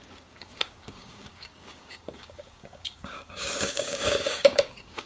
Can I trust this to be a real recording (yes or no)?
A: no